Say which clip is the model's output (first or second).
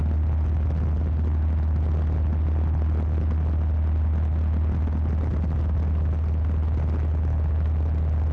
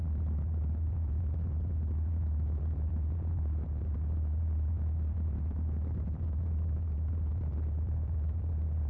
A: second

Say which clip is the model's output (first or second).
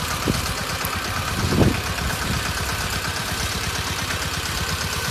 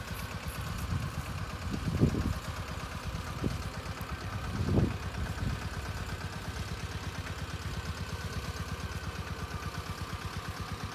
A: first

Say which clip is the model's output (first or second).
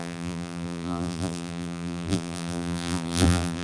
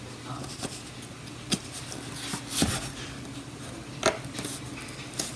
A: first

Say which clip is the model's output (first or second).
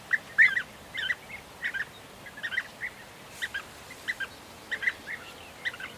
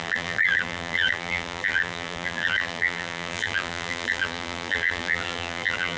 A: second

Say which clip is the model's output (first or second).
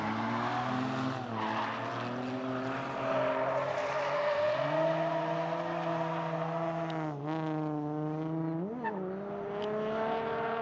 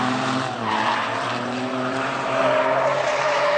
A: second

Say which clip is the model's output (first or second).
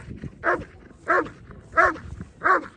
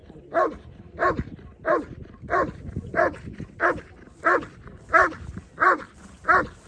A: second